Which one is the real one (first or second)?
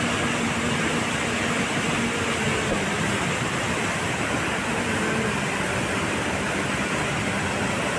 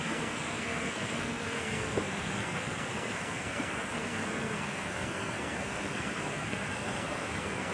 first